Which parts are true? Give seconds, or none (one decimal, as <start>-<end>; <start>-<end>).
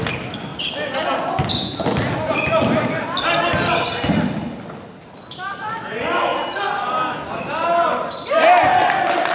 0.0-9.3